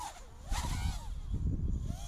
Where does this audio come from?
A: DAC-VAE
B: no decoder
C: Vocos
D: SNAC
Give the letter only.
B